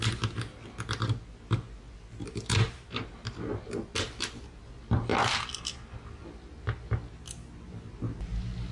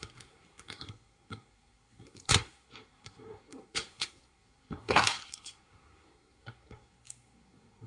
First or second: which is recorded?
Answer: first